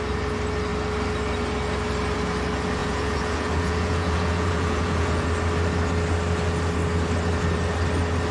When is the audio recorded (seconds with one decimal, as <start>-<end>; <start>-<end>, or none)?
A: 0.0-2.8; 5.3-8.3